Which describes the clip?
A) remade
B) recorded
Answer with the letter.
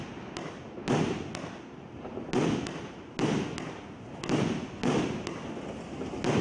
B